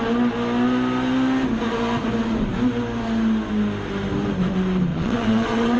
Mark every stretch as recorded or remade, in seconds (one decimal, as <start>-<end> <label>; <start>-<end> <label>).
0.0-4.9 recorded; 4.9-5.8 remade